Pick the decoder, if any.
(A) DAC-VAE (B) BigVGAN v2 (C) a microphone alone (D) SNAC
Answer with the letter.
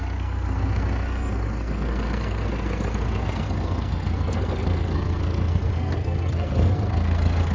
D